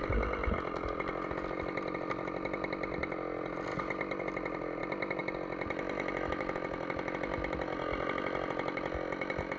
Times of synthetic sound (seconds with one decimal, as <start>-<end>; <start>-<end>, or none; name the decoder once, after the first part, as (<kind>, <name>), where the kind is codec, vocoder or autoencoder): none